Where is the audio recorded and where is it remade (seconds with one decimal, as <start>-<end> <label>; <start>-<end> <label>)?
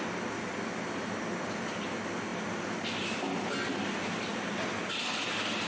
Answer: 0.0-5.7 recorded